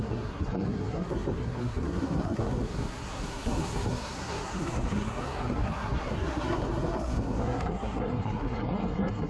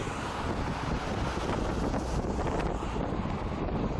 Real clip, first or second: second